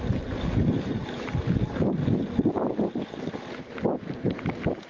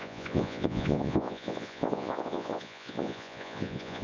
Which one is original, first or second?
first